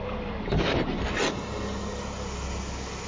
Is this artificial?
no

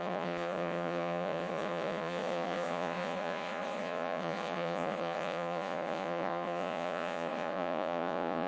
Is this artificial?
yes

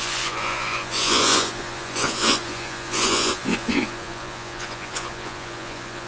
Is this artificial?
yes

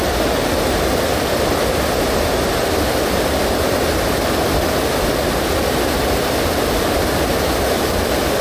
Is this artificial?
no